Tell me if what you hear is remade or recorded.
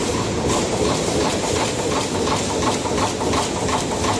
remade